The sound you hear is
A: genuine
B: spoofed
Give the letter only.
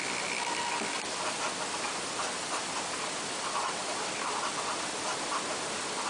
A